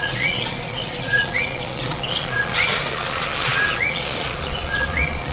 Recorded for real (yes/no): no